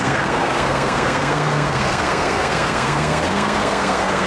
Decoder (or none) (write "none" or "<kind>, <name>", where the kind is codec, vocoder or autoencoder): codec, SNAC